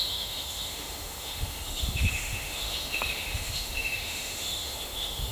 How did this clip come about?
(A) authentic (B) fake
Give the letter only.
B